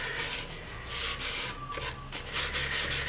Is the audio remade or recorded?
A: recorded